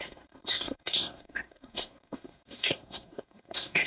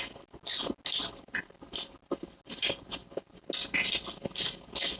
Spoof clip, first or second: first